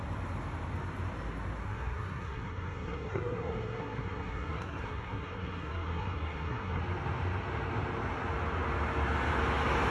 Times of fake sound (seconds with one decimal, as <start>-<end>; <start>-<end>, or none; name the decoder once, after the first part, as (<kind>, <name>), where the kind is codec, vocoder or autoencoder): 1.6-6.8 (codec, SNAC)